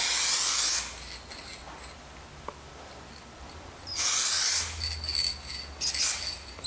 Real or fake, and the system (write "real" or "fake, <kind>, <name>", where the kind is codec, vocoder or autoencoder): real